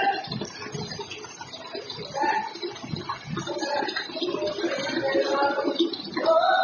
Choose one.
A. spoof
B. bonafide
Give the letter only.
B